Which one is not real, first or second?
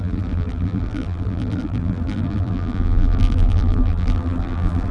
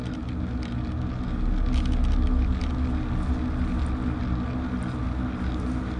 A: first